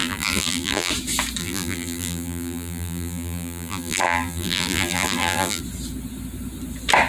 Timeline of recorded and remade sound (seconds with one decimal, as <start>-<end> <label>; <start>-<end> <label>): 0.0-0.9 remade; 0.9-1.4 recorded; 1.4-5.6 remade; 5.6-7.1 recorded